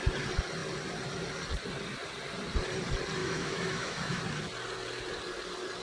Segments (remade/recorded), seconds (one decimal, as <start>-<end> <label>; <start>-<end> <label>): 0.0-3.2 recorded; 3.2-4.2 remade; 4.2-5.8 recorded